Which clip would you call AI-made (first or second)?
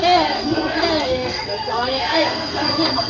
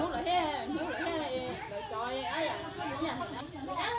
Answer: first